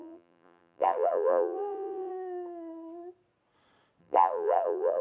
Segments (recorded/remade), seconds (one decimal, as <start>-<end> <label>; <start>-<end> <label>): 0.0-2.1 remade; 2.1-4.0 recorded; 4.0-5.0 remade